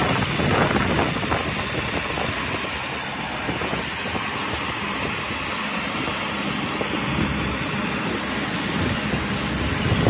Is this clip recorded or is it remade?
recorded